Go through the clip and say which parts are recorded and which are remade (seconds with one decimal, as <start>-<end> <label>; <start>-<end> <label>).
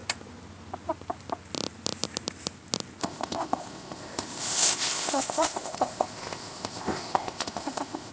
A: 0.0-3.0 recorded; 3.0-8.1 remade